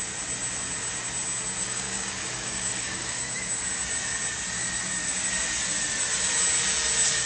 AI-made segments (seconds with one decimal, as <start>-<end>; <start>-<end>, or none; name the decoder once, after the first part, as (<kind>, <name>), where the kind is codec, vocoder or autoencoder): 1.6-3.2 (codec, DAC)